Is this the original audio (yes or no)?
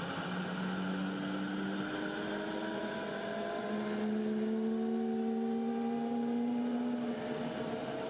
yes